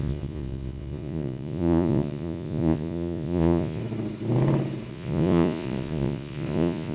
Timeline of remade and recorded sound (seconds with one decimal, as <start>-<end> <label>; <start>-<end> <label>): 0.0-3.8 remade; 3.8-4.9 recorded; 4.9-6.9 remade